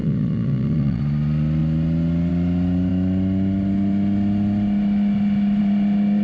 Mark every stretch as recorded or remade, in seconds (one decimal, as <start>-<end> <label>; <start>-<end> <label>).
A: 0.0-1.0 remade; 1.0-6.2 recorded